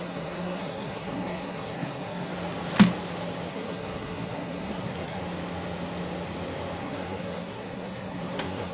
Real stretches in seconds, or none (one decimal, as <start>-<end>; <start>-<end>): 2.3-3.5; 5.2-6.8